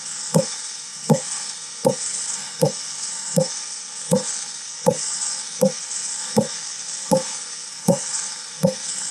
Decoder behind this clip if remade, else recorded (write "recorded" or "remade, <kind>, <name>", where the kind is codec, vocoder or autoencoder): remade, codec, SNAC